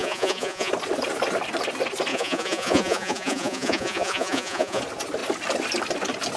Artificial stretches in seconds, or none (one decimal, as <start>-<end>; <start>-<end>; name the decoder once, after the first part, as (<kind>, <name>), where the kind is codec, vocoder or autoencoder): 0.0-0.7 (vocoder, Vocos); 2.1-4.8